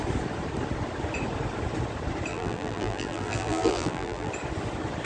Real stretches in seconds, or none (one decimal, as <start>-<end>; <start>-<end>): 0.0-2.3; 4.3-5.1